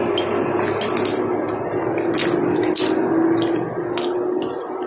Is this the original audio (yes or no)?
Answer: yes